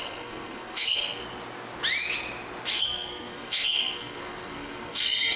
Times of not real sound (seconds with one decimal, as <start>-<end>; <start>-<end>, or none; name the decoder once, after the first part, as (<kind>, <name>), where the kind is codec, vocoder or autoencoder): 0.0-1.2 (codec, SNAC); 2.7-5.4